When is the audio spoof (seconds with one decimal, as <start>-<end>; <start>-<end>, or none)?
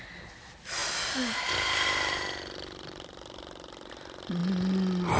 none